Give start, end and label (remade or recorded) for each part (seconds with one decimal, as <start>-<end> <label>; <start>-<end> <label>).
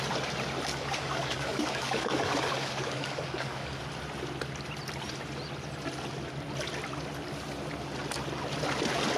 0.0-0.7 recorded; 0.7-3.8 remade; 3.8-9.2 recorded